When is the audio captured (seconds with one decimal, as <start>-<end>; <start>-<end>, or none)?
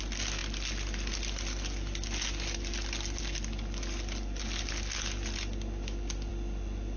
0.0-7.0